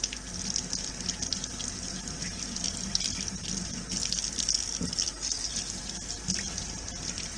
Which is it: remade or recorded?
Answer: recorded